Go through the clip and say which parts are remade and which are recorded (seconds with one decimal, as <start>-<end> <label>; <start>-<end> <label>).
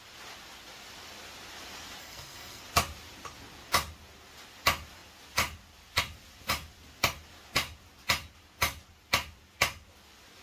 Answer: 0.0-2.0 recorded; 2.0-2.6 remade; 2.6-10.4 recorded